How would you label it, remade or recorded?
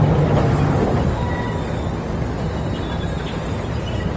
recorded